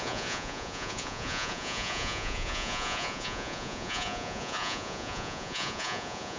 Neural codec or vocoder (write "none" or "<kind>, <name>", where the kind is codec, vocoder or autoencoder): vocoder, Vocos